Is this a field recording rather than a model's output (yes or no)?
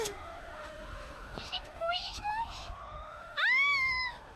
no